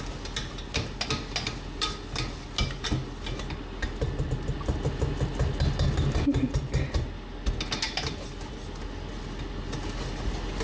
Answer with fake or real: real